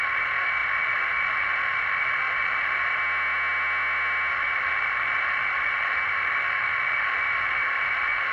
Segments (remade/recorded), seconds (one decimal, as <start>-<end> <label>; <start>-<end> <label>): 0.0-3.0 remade; 3.0-4.3 recorded; 4.3-8.3 remade